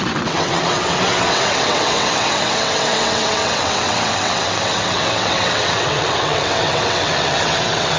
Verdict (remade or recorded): remade